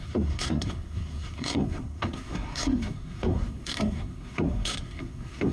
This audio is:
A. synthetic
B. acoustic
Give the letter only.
A